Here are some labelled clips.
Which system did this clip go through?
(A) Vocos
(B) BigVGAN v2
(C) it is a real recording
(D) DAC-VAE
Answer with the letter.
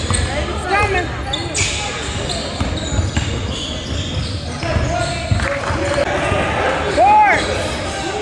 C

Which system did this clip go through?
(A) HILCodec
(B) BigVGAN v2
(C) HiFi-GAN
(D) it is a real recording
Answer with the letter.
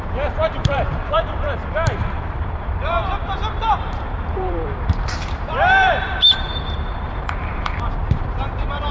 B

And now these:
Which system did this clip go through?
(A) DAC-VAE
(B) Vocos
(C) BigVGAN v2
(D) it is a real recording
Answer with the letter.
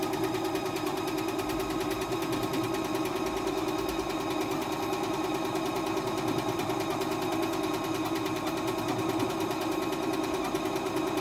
D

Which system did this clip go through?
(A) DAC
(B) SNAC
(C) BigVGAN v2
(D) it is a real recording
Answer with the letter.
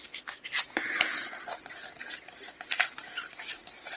D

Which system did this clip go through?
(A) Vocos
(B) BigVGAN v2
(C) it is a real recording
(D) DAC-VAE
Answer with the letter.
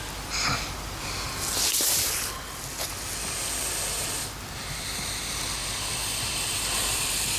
C